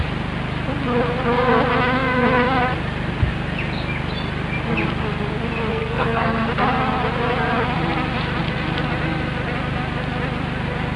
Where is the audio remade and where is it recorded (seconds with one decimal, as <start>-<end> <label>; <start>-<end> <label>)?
0.0-5.7 recorded; 5.7-6.5 remade; 6.5-11.0 recorded

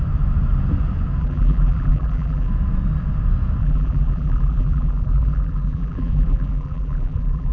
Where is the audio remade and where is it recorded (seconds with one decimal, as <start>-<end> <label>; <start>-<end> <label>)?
0.0-1.2 recorded; 1.2-2.5 remade; 2.5-3.6 recorded; 3.6-7.5 remade

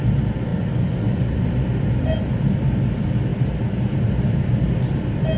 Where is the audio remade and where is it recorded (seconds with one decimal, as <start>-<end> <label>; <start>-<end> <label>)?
0.0-5.4 recorded

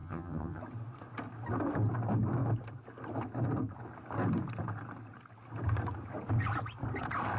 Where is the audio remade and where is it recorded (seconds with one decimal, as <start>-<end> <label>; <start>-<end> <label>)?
0.0-0.6 remade; 0.6-7.4 recorded